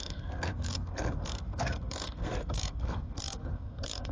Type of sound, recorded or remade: remade